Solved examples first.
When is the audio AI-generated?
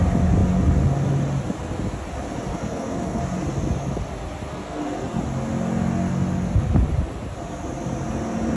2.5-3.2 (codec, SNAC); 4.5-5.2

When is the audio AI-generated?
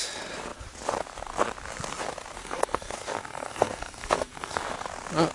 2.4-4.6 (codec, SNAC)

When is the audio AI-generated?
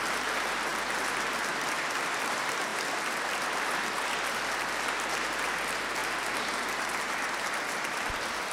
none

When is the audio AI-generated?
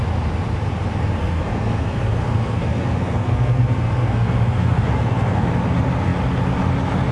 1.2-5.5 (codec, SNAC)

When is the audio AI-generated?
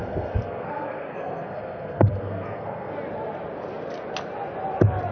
0.0-2.9 (codec, SNAC)